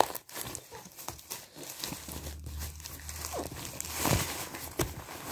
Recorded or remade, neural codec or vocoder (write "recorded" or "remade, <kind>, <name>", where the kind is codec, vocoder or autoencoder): recorded